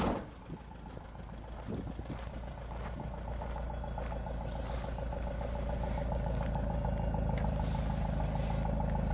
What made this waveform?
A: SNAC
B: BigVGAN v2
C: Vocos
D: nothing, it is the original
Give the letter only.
D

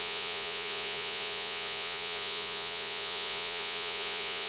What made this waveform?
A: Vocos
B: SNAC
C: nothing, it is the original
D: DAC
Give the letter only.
A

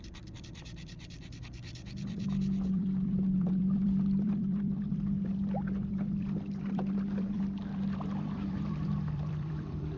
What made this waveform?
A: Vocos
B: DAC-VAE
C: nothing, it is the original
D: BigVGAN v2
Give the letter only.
D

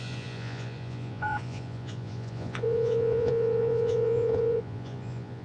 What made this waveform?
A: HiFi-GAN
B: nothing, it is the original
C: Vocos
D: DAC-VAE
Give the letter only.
C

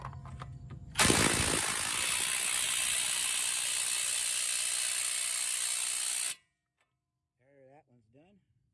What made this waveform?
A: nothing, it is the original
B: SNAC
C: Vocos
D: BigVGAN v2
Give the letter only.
A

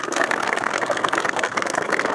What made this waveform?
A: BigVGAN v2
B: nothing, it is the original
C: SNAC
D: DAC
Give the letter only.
C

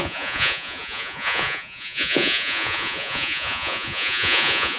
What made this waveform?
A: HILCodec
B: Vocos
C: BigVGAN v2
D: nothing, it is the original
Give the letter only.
B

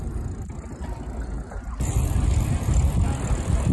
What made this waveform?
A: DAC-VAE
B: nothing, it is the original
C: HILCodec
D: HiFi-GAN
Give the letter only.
B